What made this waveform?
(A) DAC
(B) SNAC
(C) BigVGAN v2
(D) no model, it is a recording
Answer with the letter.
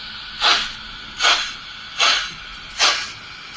D